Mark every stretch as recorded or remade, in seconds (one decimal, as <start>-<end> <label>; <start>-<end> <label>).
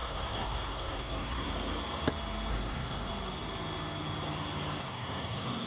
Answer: 0.0-1.5 remade; 1.5-2.5 recorded; 2.5-3.1 remade; 3.1-4.8 recorded; 4.8-5.7 remade